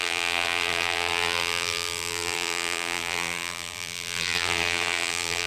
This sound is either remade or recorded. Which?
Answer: remade